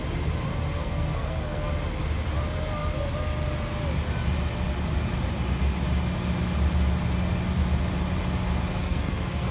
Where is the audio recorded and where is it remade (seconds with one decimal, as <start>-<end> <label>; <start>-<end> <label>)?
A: 0.0-0.8 recorded; 0.8-1.7 remade; 1.7-8.8 recorded; 8.8-9.5 remade